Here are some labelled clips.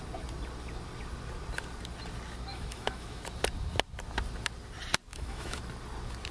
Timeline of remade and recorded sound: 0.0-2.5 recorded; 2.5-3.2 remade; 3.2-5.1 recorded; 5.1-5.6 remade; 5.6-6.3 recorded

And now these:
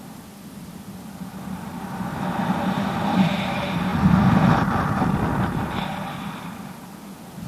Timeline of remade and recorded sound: 0.0-7.5 recorded

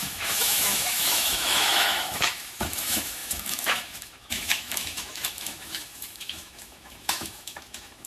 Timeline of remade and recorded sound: 0.0-8.1 remade